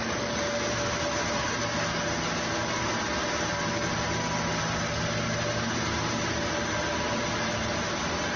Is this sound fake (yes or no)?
no